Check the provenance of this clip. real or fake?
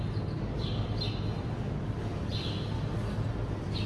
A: real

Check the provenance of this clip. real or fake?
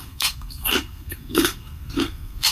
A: fake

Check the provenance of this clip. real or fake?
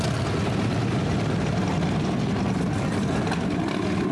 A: real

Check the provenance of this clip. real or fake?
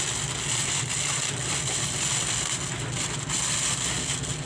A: real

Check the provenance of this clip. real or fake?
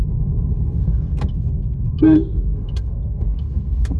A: fake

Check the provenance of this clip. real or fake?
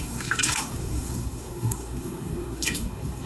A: fake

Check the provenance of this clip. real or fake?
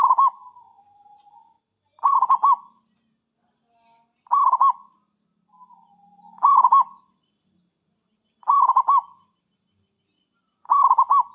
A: real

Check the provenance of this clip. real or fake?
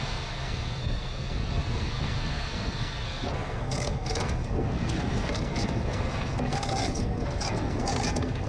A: fake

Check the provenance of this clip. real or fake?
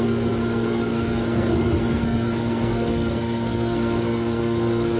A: fake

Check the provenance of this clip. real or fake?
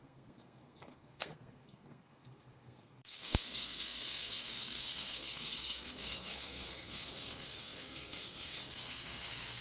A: fake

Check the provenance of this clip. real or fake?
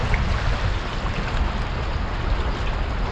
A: real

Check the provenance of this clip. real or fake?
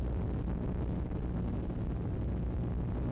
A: real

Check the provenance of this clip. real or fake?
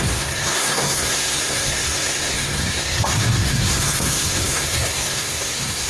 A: fake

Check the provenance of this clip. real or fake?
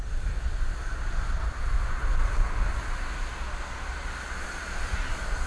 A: real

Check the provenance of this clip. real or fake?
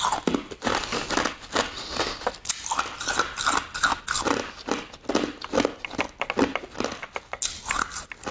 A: real